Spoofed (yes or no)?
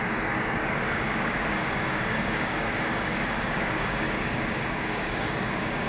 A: yes